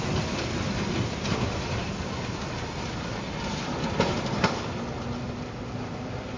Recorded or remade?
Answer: recorded